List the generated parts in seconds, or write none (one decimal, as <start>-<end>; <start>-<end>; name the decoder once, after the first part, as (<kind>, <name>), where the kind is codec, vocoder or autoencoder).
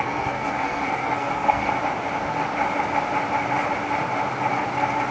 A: 0.0-1.7 (codec, SNAC)